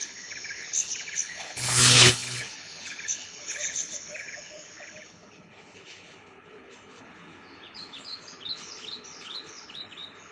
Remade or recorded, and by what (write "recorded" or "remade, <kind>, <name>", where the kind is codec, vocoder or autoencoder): remade, codec, HILCodec